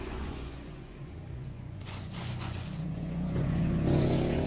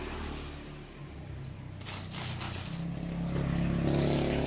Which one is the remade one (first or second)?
first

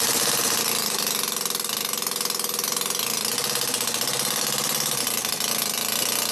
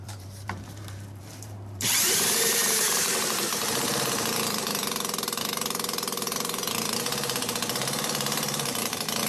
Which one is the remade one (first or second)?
second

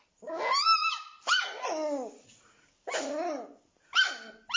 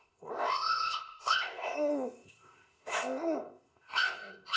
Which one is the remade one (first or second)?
second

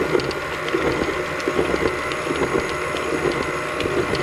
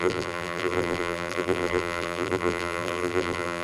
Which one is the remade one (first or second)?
second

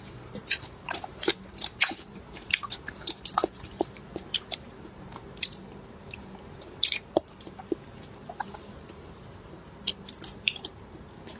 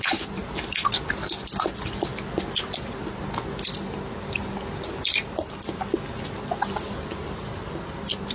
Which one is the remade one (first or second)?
first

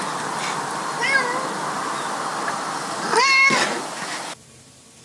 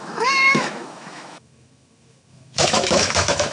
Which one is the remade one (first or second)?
second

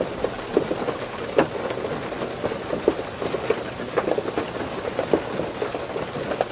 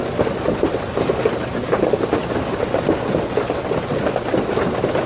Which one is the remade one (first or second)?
second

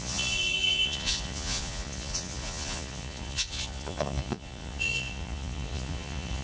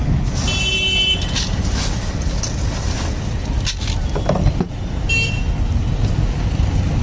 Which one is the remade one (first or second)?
first